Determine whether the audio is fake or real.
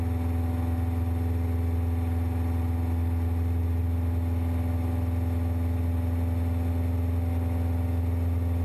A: real